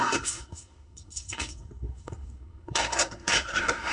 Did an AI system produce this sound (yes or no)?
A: yes